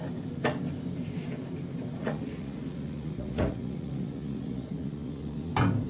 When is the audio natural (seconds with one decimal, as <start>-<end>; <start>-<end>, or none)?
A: 0.0-2.0; 5.5-5.9